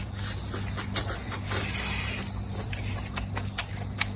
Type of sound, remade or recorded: recorded